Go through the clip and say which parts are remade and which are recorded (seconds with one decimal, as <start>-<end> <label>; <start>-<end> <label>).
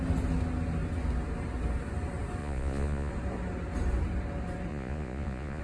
0.0-2.4 recorded; 2.4-3.1 remade; 3.1-4.7 recorded; 4.7-5.6 remade